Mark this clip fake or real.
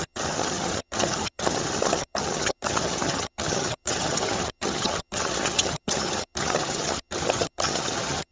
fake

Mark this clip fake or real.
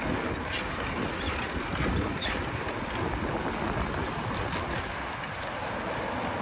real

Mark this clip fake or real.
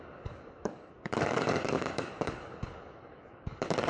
fake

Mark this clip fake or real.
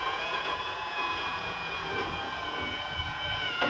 fake